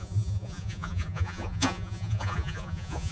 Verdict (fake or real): fake